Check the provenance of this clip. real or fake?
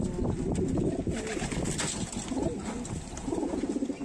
real